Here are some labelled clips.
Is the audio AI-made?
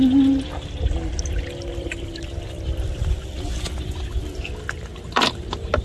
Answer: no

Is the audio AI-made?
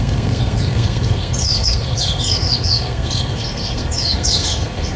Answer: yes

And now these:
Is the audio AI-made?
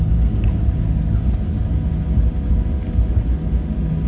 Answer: no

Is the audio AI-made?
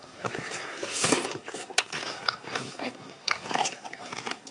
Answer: yes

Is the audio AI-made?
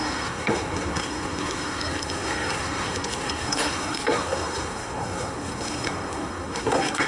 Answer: yes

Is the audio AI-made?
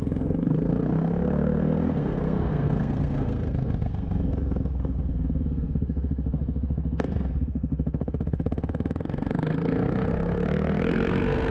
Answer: yes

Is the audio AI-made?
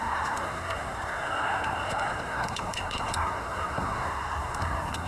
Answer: yes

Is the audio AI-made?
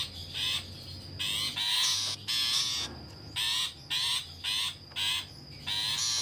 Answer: no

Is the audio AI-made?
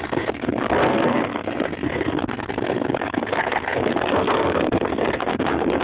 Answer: yes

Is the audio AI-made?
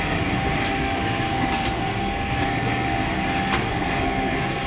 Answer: yes